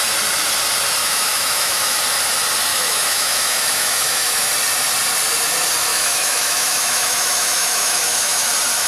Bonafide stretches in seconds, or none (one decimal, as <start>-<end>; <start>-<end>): 0.0-1.0; 2.0-2.7; 4.5-5.9; 8.5-8.9